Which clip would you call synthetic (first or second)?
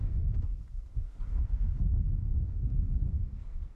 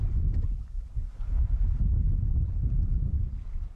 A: first